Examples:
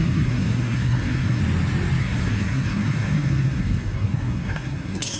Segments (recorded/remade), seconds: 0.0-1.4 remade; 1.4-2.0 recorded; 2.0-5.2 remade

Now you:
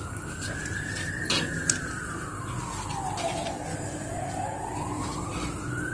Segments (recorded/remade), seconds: 0.0-3.7 recorded; 3.7-4.7 remade; 4.7-5.9 recorded

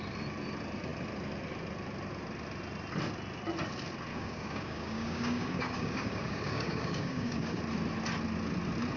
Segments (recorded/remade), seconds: 0.0-4.1 recorded; 4.1-7.6 remade; 7.6-9.0 recorded

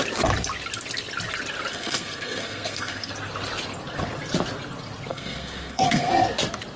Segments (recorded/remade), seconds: 0.0-1.7 recorded; 1.7-3.1 remade; 3.1-5.1 recorded; 5.1-6.1 remade; 6.1-6.8 recorded

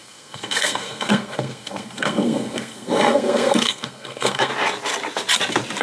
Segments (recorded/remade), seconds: 0.0-4.5 remade; 4.5-5.8 recorded

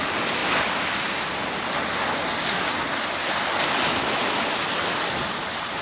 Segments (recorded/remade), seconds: 0.0-5.8 recorded

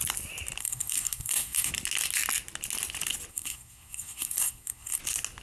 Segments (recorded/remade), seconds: 0.0-0.6 recorded; 0.6-1.7 remade; 1.7-3.3 recorded; 3.3-5.0 remade; 5.0-5.4 recorded